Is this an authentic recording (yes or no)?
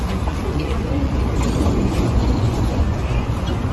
no